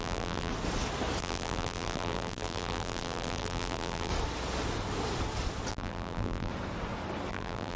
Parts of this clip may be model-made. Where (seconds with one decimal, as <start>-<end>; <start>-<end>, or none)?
0.0-0.5; 1.2-4.1; 5.7-6.5; 7.3-7.8